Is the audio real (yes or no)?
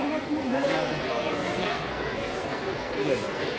no